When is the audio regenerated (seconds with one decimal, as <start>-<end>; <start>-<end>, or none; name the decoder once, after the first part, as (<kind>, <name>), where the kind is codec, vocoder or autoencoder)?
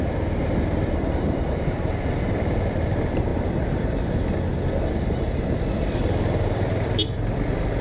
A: 0.0-3.3 (vocoder, BigVGAN v2); 5.7-7.8